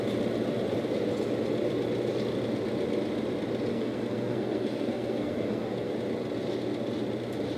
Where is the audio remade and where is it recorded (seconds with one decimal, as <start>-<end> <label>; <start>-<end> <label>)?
0.0-3.7 recorded; 3.7-5.9 remade; 5.9-7.6 recorded

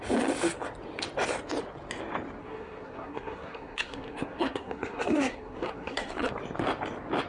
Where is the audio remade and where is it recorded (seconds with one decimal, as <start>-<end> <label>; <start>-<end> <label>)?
0.0-2.4 recorded; 2.4-6.3 remade; 6.3-7.3 recorded